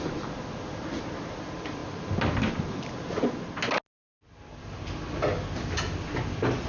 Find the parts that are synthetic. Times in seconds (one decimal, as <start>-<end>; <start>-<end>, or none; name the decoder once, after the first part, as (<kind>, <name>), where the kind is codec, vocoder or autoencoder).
none